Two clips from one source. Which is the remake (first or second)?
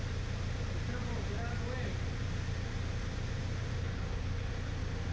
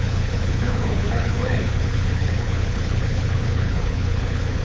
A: second